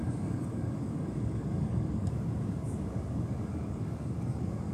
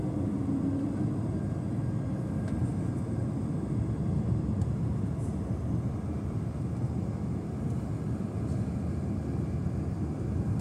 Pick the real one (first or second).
second